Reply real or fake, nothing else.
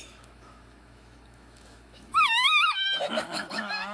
fake